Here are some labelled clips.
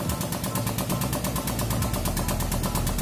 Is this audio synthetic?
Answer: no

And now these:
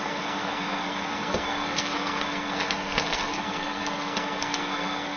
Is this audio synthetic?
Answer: yes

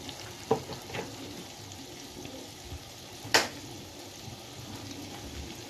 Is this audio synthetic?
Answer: no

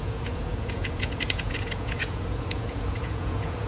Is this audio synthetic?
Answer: yes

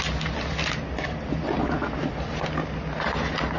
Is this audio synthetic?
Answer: no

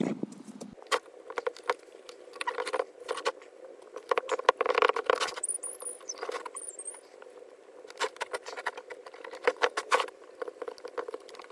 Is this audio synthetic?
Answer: no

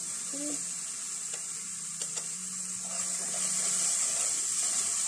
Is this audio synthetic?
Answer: no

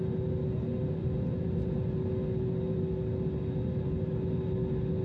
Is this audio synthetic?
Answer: no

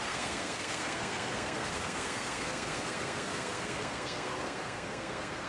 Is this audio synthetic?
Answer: yes